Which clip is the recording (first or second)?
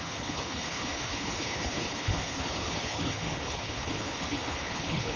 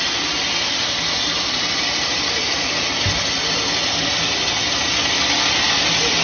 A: second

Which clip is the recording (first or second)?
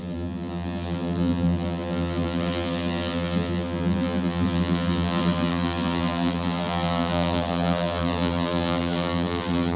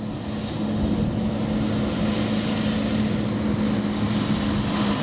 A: second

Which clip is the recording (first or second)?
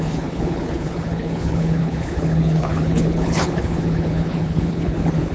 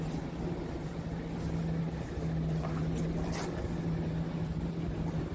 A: second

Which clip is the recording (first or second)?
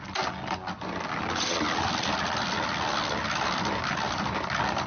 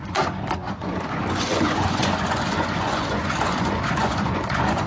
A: first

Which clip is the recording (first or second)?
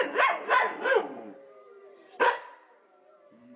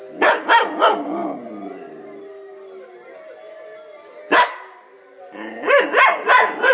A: second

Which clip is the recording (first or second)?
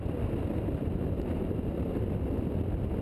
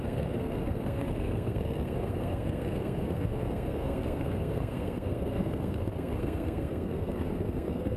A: first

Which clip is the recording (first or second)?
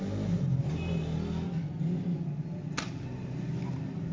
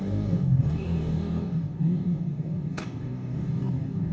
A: first